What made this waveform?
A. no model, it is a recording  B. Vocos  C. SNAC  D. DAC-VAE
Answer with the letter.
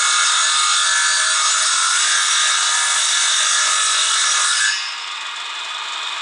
A